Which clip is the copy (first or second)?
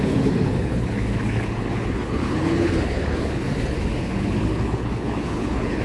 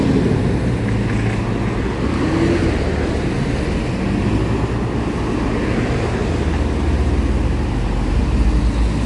first